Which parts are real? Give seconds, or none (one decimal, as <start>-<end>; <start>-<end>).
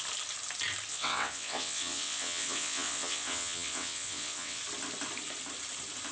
0.0-0.9; 4.6-6.1